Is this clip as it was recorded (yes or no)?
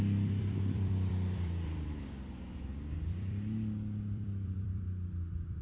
no